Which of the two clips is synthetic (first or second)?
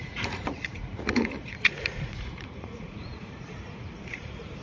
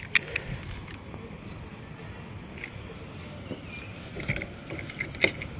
first